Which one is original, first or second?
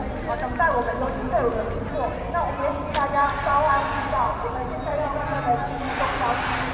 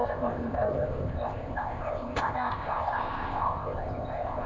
first